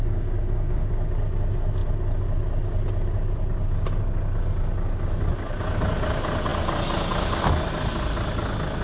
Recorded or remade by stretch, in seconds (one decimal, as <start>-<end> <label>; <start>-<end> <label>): 0.0-0.9 remade; 0.9-8.8 recorded

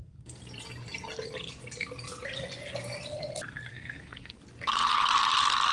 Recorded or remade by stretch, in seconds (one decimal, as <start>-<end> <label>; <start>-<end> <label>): 0.0-0.4 remade; 0.4-3.7 recorded; 3.7-4.4 remade; 4.4-5.7 recorded

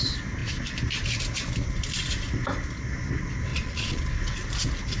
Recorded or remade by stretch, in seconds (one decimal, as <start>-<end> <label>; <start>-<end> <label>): 0.0-3.5 recorded; 3.5-4.0 remade; 4.0-5.0 recorded